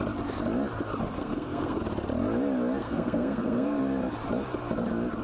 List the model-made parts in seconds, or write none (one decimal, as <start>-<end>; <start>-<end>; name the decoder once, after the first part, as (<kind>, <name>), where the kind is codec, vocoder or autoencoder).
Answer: 1.2-1.8 (codec, SNAC); 2.8-3.8